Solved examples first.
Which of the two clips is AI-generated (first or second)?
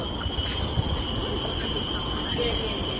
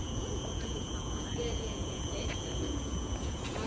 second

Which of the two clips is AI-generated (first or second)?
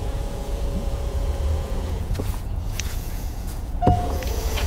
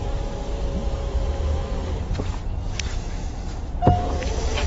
first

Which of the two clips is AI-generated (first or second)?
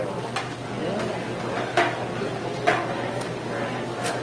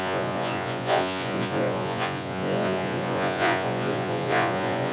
second